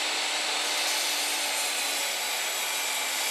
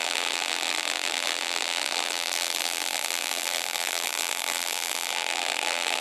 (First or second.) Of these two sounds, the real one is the first